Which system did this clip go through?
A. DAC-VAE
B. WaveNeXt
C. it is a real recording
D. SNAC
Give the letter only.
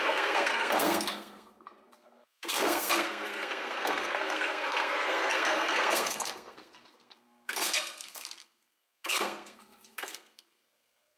D